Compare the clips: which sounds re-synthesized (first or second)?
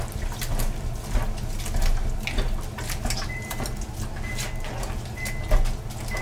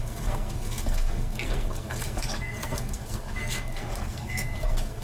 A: second